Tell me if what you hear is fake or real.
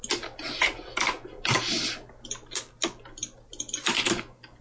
real